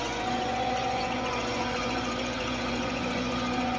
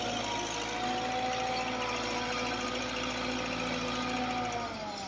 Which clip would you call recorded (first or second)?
second